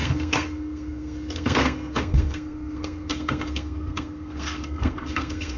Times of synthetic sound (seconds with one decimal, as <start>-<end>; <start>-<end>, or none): 0.0-5.6

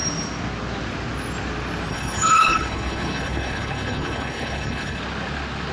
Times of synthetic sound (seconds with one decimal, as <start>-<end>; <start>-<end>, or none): 1.9-5.0

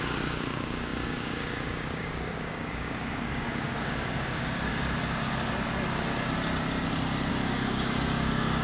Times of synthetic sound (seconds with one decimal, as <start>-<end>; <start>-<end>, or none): 0.0-4.7; 7.3-8.6

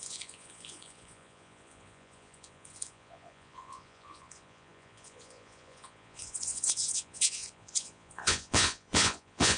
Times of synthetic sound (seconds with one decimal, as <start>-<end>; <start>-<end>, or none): 0.0-9.6